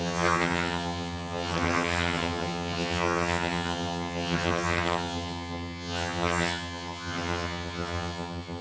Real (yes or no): no